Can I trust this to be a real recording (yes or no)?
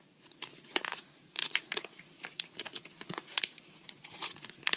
no